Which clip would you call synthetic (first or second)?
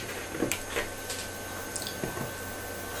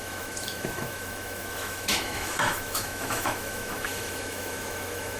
second